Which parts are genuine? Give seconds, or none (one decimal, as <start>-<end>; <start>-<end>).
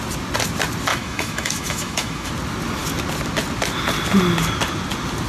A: 0.0-0.9; 2.3-5.3